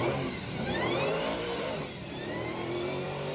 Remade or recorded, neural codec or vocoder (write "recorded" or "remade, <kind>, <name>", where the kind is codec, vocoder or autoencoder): remade, vocoder, BigVGAN v2